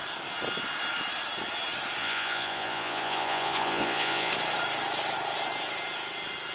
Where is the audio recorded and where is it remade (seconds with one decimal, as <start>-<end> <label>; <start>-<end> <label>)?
0.0-2.0 recorded; 2.0-4.3 remade; 4.3-6.5 recorded